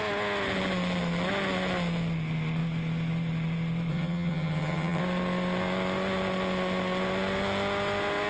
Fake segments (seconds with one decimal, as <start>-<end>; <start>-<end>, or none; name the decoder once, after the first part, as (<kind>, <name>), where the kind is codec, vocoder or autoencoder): 3.9-5.0 (vocoder, HiFi-GAN)